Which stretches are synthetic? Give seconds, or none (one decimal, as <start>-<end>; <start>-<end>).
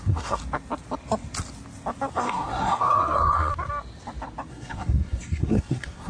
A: 0.0-0.4; 2.1-3.5; 4.5-6.1